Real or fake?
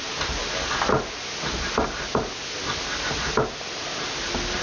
real